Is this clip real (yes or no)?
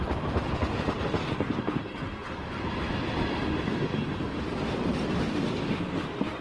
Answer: no